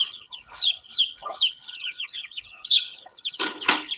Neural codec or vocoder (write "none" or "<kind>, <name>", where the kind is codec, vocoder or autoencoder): codec, HILCodec